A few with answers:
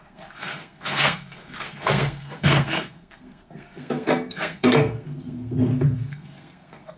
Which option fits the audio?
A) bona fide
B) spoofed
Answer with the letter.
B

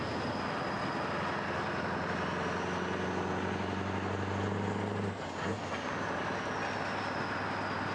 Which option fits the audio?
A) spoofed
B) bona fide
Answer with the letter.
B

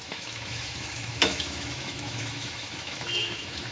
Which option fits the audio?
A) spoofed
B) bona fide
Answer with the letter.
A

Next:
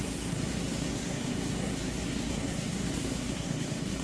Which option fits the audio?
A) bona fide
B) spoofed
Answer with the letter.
B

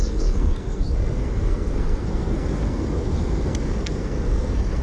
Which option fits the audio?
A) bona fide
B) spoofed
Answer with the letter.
B